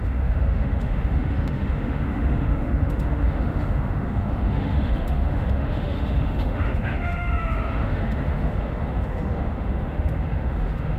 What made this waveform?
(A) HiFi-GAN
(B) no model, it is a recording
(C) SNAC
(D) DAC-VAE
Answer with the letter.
D